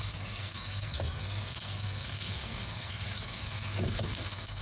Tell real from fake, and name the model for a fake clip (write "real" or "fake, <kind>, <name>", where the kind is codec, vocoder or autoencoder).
fake, codec, SNAC